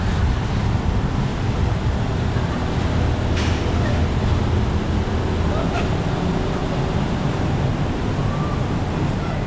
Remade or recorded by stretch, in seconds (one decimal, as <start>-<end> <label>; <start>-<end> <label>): 0.0-1.3 remade; 1.3-6.1 recorded; 6.1-6.6 remade; 6.6-7.2 recorded; 7.2-9.5 remade